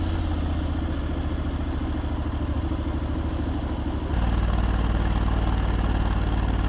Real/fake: real